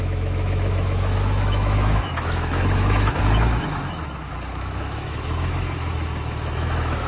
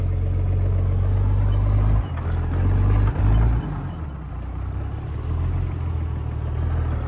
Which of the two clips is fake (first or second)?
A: first